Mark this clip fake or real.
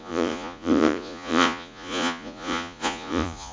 fake